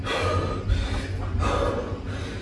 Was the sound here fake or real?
real